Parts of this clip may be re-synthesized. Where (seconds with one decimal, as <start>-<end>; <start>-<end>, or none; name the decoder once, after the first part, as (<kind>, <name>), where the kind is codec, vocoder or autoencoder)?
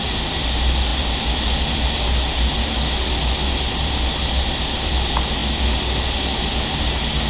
none